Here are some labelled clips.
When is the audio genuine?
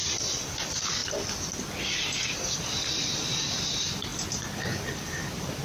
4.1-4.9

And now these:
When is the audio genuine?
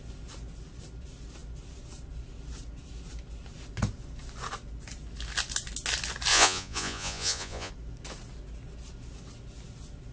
0.0-6.3; 7.7-10.1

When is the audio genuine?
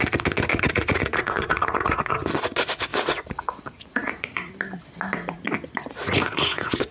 0.0-0.5; 2.1-2.9; 4.5-6.0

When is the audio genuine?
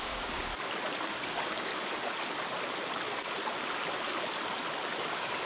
0.5-1.1; 1.7-5.0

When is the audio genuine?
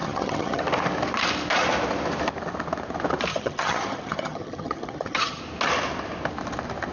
0.6-3.3; 5.4-6.9